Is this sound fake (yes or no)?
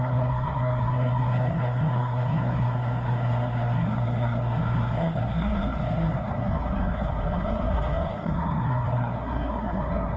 yes